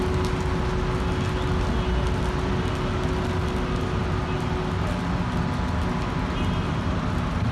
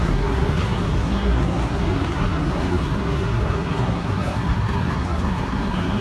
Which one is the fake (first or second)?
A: second